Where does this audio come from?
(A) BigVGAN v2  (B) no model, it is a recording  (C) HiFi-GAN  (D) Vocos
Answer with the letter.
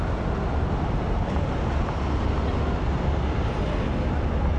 B